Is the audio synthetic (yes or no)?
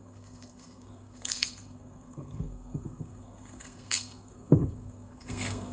yes